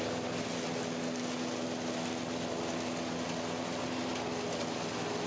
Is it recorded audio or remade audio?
recorded